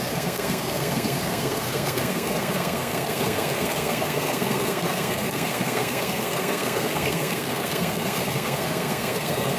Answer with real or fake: fake